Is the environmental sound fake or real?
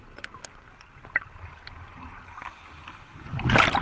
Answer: real